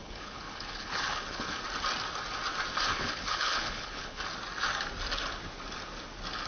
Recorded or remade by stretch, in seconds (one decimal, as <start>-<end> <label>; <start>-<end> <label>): 0.0-1.6 remade; 1.6-2.9 recorded; 2.9-4.2 remade; 4.2-6.5 recorded